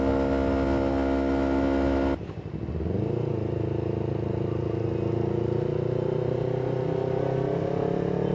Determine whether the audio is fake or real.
real